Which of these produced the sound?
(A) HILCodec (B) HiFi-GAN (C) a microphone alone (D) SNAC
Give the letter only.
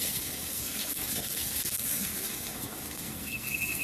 D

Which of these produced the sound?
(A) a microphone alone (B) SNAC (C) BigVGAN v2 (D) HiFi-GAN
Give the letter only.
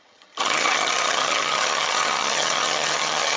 D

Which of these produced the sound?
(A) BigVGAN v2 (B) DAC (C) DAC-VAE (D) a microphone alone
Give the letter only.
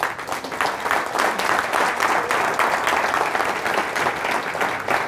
D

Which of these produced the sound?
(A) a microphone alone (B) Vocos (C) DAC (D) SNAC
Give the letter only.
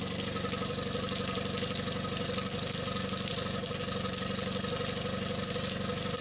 A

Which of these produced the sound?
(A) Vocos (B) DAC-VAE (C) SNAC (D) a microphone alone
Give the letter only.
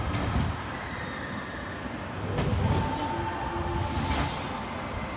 D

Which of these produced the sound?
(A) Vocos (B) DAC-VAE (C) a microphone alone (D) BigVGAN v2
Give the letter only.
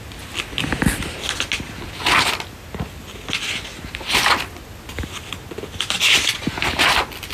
C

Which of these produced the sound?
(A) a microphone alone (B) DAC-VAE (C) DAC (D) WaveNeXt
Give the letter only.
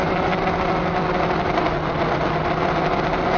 A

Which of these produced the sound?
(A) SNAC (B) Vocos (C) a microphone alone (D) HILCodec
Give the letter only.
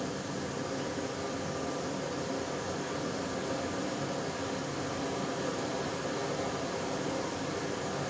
C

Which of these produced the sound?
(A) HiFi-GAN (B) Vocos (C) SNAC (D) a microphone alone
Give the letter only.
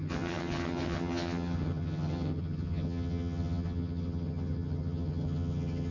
A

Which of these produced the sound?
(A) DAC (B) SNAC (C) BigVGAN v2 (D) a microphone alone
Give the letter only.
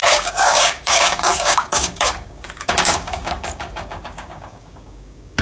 A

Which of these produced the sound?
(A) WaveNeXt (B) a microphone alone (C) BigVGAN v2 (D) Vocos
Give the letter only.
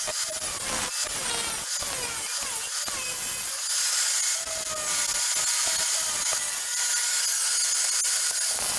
B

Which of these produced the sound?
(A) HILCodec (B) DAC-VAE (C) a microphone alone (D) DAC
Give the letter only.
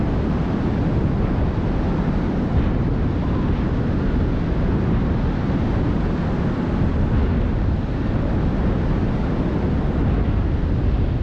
C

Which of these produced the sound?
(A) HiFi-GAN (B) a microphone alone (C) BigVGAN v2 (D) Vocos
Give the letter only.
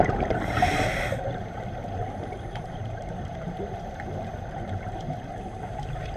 C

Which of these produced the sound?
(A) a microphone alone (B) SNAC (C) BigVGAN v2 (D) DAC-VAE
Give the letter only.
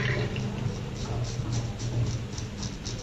A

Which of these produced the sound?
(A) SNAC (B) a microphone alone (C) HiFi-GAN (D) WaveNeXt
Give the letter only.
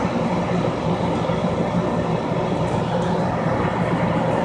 B